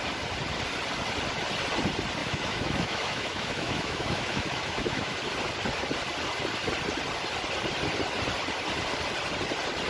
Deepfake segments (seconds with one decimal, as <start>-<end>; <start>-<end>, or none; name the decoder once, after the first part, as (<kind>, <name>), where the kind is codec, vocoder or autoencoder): 2.2-5.1 (autoencoder, DAC-VAE)